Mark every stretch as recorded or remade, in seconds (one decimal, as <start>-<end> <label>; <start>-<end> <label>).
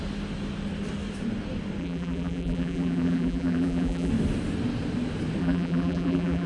0.0-1.8 recorded; 1.8-4.1 remade; 4.1-5.4 recorded; 5.4-6.5 remade